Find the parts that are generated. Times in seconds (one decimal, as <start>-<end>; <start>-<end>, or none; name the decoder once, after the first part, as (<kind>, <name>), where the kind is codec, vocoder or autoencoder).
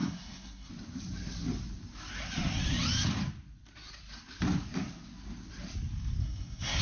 0.0-0.7 (codec, SNAC); 6.2-6.8